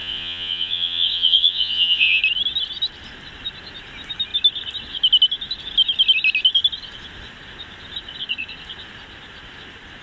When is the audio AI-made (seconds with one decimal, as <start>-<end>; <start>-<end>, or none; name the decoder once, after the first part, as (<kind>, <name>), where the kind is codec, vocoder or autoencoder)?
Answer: 0.0-2.2 (vocoder, Vocos)